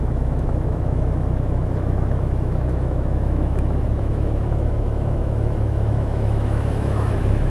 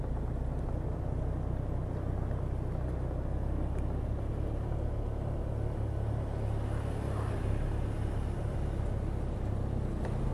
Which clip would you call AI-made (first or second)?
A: first